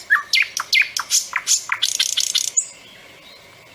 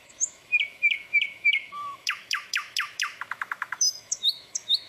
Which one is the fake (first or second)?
second